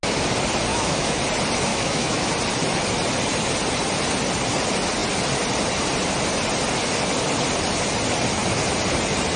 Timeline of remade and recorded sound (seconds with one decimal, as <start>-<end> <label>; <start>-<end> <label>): 0.0-0.7 recorded; 0.7-1.2 remade; 1.2-1.7 recorded; 1.7-2.3 remade; 2.3-9.4 recorded